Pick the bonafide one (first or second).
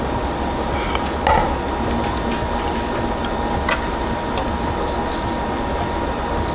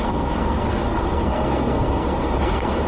first